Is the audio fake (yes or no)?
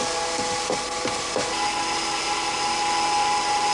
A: no